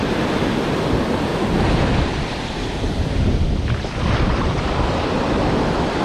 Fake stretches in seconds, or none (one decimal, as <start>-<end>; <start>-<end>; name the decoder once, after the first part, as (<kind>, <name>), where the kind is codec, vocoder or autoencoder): 0.0-0.5 (vocoder, BigVGAN v2); 1.3-4.6